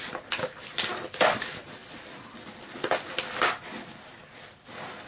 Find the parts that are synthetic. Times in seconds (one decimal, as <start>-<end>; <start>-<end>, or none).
none